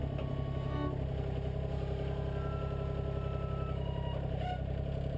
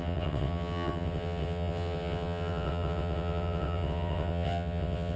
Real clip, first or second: first